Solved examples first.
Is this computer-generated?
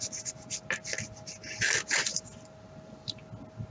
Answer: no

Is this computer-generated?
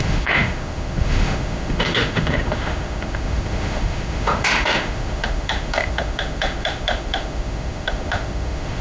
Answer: yes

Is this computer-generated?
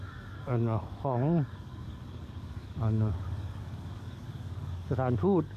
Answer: yes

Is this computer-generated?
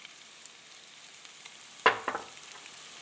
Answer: no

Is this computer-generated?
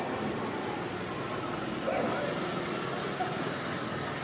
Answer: no